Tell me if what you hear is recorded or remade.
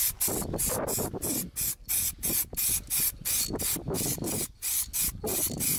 recorded